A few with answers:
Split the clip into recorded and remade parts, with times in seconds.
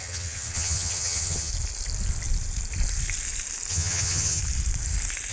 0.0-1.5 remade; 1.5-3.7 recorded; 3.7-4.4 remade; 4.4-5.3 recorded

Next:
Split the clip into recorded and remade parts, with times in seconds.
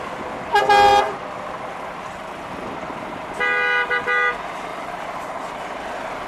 0.0-4.7 recorded; 4.7-5.3 remade; 5.3-6.3 recorded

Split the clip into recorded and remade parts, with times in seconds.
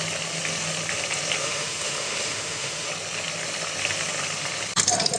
0.0-1.4 recorded; 1.4-2.9 remade; 2.9-5.2 recorded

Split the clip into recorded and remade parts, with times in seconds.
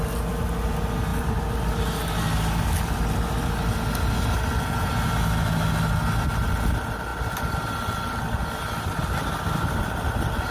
0.0-10.5 recorded